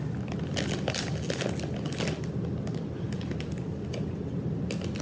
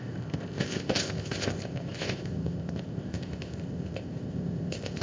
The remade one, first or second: second